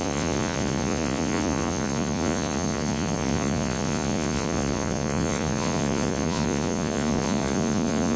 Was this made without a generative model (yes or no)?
no